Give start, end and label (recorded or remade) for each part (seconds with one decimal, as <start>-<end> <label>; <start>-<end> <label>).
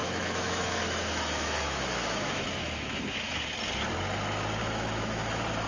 0.0-3.4 remade; 3.4-4.6 recorded; 4.6-5.3 remade; 5.3-5.7 recorded